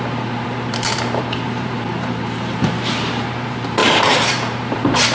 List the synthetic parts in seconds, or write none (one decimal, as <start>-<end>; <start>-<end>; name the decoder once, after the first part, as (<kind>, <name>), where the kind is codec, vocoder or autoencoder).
0.0-5.1 (vocoder, BigVGAN v2)